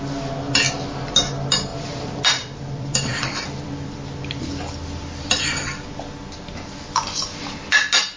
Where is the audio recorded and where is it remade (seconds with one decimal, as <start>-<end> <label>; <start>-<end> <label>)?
0.0-1.7 recorded; 1.7-4.4 remade; 4.4-5.0 recorded; 5.0-5.8 remade; 5.8-8.2 recorded